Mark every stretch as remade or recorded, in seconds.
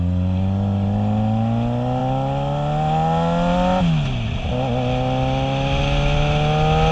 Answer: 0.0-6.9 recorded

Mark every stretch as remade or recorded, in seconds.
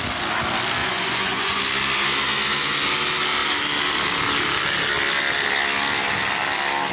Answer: 0.0-0.8 recorded; 0.8-1.6 remade; 1.6-6.9 recorded